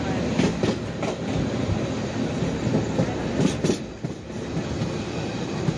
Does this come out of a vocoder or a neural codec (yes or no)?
no